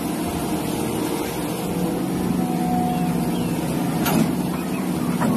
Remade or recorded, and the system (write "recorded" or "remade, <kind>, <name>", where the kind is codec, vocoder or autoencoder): recorded